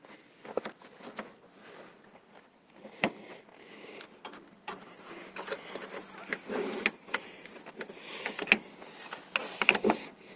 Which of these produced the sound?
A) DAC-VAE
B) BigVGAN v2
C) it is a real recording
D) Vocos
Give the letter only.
C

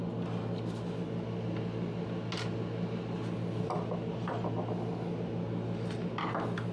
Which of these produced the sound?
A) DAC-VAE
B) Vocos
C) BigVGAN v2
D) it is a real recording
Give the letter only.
D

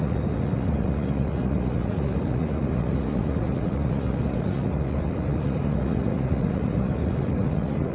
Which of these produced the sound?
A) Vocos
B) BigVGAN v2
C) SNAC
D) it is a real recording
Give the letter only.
A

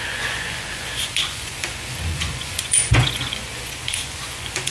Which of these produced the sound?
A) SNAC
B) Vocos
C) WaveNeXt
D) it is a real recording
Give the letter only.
B